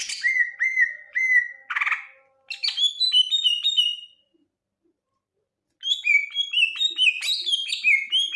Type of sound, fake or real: real